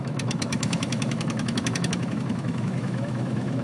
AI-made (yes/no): yes